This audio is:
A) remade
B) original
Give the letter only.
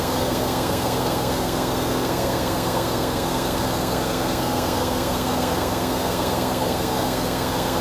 A